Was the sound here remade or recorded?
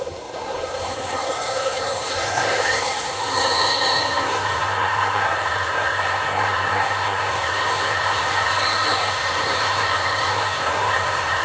remade